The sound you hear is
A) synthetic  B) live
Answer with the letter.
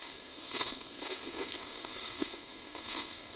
A